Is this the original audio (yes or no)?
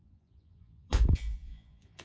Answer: no